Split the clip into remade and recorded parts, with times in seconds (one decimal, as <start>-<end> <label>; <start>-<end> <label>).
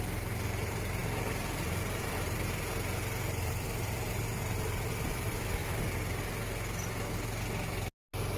0.0-5.6 remade; 5.6-8.4 recorded